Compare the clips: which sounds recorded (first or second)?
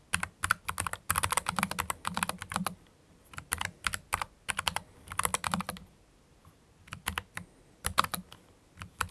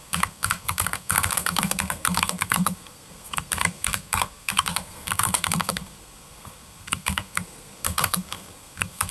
first